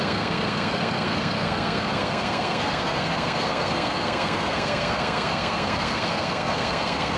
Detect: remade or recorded remade